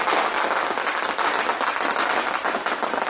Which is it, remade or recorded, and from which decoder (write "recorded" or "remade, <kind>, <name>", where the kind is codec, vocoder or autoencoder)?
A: recorded